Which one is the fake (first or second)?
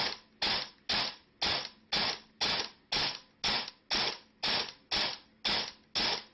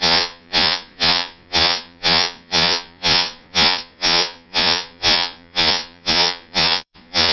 second